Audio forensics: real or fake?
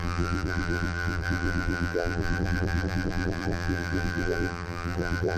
fake